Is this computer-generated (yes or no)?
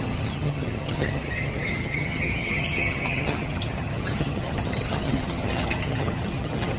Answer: yes